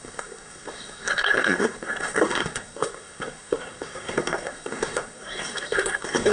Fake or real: fake